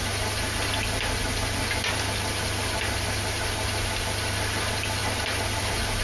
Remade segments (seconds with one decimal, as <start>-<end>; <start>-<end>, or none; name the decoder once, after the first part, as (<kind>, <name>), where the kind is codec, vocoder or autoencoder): none